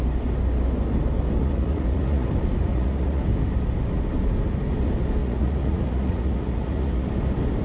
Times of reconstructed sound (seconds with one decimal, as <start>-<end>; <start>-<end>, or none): 1.4-2.3; 2.7-3.2; 5.2-7.1